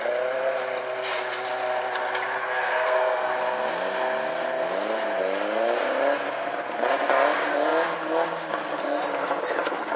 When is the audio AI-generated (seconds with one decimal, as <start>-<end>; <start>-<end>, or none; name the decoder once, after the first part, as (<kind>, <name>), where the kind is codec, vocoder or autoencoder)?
2.4-3.3 (codec, SNAC)